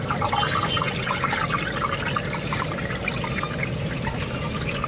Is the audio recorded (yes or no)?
yes